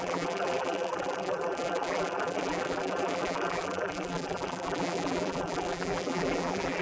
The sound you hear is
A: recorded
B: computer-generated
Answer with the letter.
B